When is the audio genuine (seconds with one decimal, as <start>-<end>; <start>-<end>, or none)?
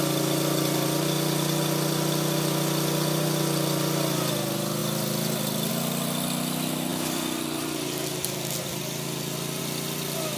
0.0-10.4